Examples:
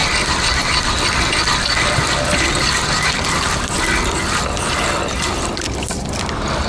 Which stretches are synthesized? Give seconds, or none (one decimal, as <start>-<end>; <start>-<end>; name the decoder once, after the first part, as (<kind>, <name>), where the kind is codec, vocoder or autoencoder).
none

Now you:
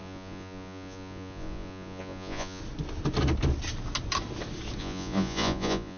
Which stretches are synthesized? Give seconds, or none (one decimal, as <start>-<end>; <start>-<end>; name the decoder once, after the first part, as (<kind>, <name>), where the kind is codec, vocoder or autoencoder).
0.0-2.6 (vocoder, Vocos); 4.8-6.0

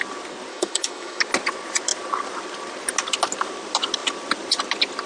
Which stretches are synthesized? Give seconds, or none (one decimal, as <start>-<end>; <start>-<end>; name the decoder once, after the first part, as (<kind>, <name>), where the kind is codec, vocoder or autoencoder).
0.5-1.2 (autoencoder, DAC-VAE)

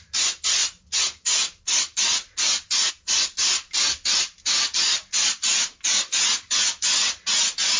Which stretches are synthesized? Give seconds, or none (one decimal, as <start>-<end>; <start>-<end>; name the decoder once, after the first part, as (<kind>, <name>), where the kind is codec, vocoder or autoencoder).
none

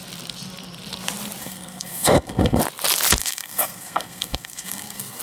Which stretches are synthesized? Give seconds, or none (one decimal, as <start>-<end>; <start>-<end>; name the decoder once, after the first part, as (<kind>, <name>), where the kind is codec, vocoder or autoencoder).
1.4-2.6 (codec, SNAC); 3.2-5.2